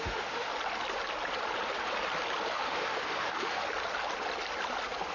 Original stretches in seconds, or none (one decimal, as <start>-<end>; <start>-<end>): 0.5-2.5; 3.6-5.1